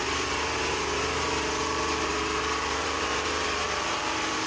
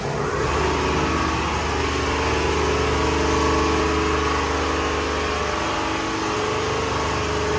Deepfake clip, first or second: first